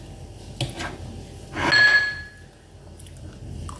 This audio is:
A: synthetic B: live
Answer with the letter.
B